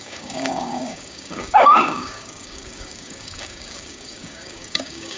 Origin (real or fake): fake